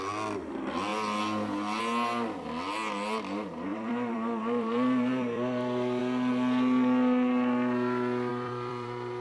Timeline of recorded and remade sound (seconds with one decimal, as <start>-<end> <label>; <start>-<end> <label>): 0.0-3.7 recorded; 3.7-6.0 remade; 6.0-8.3 recorded; 8.3-9.2 remade